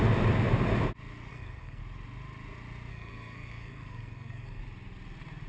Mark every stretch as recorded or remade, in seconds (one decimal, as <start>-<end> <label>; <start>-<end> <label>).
0.0-1.3 recorded; 1.3-1.8 remade; 1.8-2.9 recorded; 2.9-4.6 remade; 4.6-5.5 recorded